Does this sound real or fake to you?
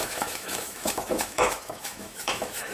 fake